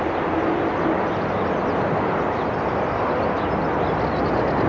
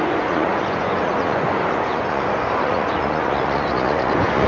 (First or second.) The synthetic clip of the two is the second